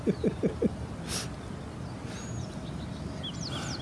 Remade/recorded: recorded